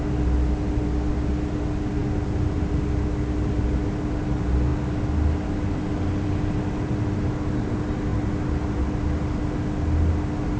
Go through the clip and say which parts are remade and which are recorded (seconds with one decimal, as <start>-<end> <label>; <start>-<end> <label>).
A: 0.0-10.6 recorded